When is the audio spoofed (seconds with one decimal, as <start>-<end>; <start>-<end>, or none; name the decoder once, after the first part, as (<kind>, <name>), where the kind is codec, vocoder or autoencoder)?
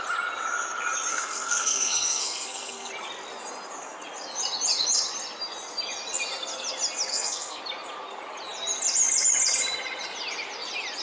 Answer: 1.1-2.9 (codec, SNAC); 7.1-7.6